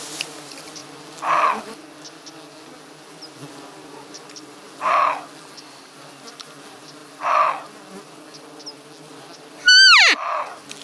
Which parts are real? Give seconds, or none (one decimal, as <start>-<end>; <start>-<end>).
0.0-10.8